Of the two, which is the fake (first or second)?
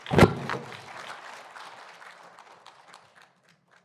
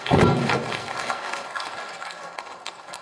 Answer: second